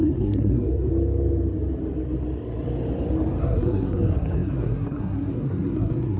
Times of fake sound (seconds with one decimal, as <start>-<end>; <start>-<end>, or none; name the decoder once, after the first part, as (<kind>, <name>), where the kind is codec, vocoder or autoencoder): 0.0-0.9 (codec, SNAC); 3.4-6.2